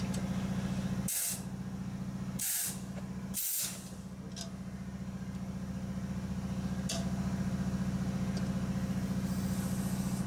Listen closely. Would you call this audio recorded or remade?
recorded